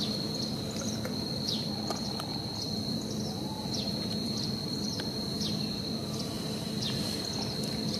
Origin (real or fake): fake